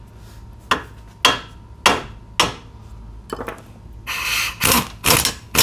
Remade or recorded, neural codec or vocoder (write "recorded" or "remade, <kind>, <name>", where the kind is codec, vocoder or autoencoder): recorded